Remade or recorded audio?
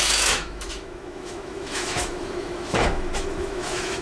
remade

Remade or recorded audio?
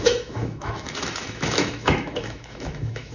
remade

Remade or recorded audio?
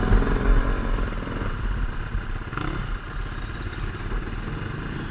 recorded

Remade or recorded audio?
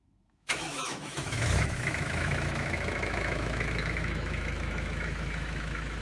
remade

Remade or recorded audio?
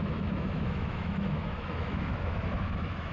remade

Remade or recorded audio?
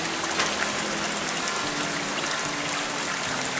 recorded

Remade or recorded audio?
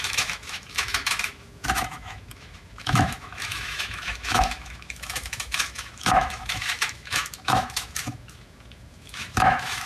remade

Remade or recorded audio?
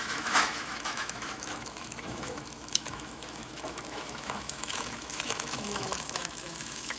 remade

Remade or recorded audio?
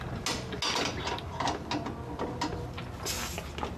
recorded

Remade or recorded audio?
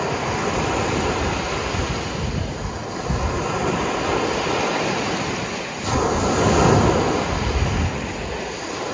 recorded